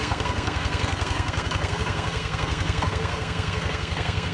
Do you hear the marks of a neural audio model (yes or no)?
yes